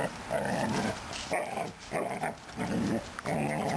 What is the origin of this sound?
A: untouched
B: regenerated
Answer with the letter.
A